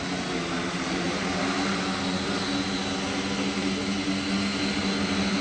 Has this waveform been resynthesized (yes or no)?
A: no